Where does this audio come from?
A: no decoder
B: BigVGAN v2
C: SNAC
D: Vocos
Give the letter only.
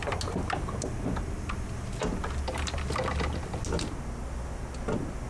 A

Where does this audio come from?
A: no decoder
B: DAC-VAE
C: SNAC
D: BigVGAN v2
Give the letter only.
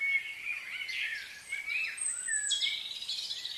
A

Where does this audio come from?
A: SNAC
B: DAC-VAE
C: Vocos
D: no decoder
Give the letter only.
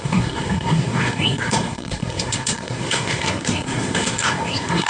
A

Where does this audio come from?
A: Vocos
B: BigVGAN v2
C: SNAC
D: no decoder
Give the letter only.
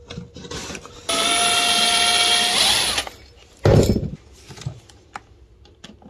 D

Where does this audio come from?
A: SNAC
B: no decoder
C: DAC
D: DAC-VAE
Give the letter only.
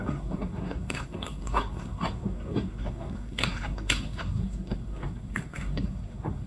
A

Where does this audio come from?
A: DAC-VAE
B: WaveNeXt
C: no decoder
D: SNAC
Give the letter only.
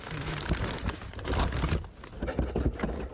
C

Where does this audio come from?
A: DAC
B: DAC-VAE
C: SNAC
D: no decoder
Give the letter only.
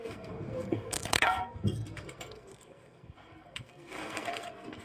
C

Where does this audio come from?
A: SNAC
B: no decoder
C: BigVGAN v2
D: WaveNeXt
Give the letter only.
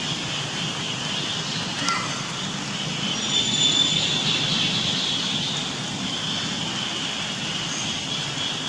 B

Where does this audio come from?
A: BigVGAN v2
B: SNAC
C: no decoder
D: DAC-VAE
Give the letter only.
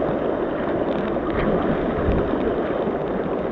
C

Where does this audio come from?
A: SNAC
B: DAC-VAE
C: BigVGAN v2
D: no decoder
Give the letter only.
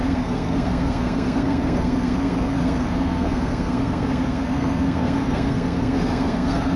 A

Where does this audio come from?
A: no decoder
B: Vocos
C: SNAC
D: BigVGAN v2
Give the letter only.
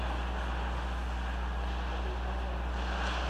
A